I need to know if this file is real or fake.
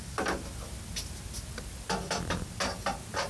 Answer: real